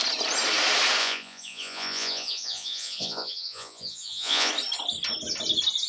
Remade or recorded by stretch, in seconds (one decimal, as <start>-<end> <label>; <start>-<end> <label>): 0.0-1.0 recorded; 1.0-4.5 remade; 4.5-5.9 recorded